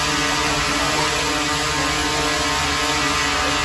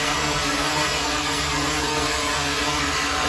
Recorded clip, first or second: first